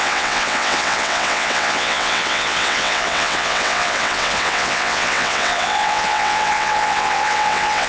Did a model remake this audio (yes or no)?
yes